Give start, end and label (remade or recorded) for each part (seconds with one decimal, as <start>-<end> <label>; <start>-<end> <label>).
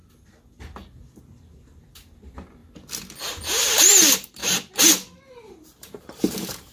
0.0-1.2 recorded; 1.2-2.6 remade; 2.6-3.3 recorded; 3.3-4.4 remade; 4.4-5.3 recorded; 5.3-6.7 remade